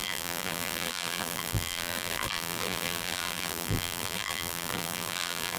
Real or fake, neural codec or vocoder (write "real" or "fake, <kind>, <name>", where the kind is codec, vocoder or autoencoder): fake, vocoder, BigVGAN v2